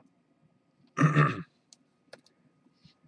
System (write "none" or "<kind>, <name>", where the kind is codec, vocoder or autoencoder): none